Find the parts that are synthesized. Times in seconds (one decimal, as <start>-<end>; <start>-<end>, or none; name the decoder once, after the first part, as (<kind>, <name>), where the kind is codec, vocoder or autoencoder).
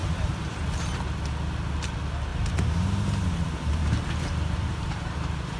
2.3-3.8 (vocoder, BigVGAN v2); 4.7-5.6